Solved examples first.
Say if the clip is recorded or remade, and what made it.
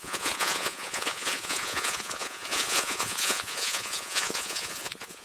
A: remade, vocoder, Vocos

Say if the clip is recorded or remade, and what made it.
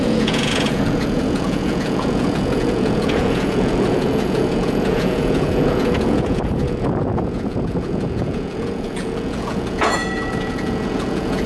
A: remade, vocoder, Vocos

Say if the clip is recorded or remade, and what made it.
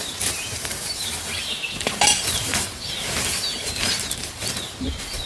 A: remade, vocoder, BigVGAN v2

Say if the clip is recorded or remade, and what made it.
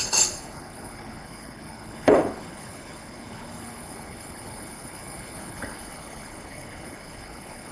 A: remade, codec, HILCodec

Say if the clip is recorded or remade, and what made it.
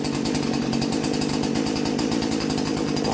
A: recorded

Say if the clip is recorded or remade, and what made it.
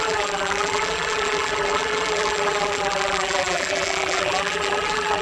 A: remade, vocoder, BigVGAN v2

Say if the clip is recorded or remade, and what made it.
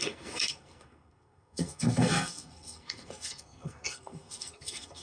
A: remade, codec, SNAC